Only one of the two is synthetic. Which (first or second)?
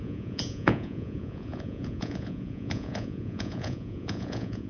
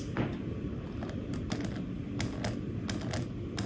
first